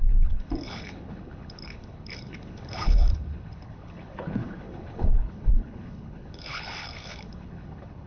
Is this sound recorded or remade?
remade